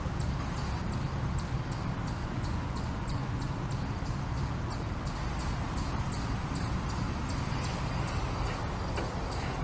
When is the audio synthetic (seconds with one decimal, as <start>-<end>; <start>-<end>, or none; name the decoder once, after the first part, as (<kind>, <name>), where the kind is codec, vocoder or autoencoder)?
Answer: 2.2-3.5 (vocoder, Vocos)